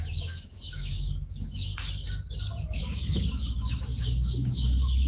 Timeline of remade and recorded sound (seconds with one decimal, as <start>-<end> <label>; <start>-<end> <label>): 0.0-1.7 remade; 1.7-2.6 recorded; 2.6-5.1 remade